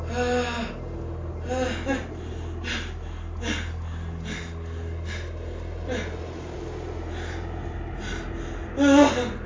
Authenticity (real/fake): real